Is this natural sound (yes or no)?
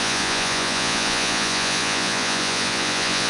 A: no